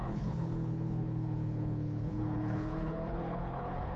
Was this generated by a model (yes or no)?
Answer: yes